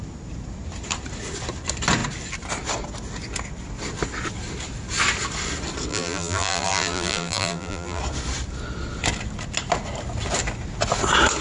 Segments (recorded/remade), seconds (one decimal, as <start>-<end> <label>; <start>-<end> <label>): 0.0-5.9 recorded; 5.9-8.0 remade; 8.0-11.4 recorded